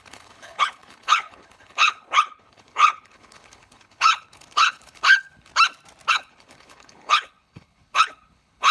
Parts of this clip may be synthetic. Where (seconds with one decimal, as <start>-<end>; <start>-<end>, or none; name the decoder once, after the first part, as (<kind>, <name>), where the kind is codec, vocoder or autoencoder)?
0.0-5.5 (codec, HILCodec); 6.1-8.7